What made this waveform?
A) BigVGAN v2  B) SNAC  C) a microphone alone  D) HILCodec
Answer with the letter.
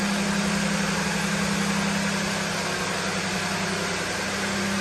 C